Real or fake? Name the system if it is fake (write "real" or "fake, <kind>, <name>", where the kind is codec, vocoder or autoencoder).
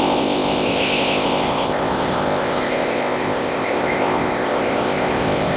fake, codec, ZipCodec